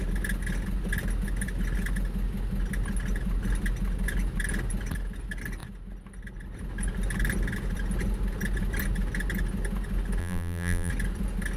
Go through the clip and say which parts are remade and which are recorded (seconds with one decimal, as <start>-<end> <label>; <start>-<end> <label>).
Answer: 0.0-10.2 recorded; 10.2-10.9 remade; 10.9-11.6 recorded